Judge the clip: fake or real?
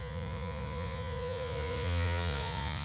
fake